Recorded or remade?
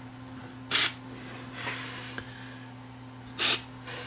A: recorded